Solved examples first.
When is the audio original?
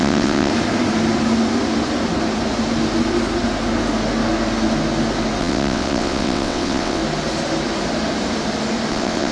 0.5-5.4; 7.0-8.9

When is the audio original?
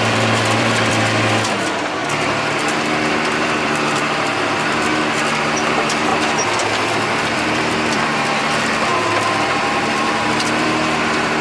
6.1-6.9; 8.9-9.5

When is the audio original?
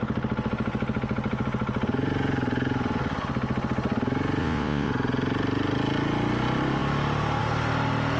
0.0-4.4; 4.9-8.2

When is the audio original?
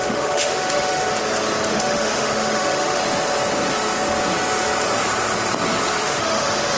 1.1-1.7; 3.0-6.0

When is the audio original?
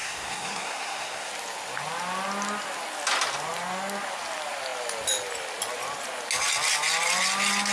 1.3-7.7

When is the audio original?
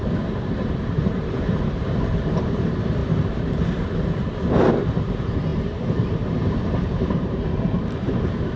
3.0-4.7